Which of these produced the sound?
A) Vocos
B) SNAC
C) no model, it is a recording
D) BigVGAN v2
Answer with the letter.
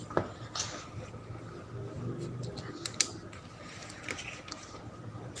C